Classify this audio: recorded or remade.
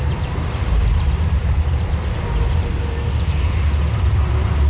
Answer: remade